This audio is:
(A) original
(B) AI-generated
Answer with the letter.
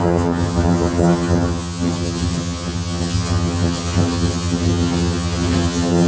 B